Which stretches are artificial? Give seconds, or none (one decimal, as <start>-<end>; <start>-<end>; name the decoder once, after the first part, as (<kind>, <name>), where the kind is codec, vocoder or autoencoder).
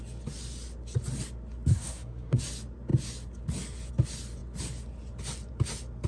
1.7-2.4 (codec, SNAC)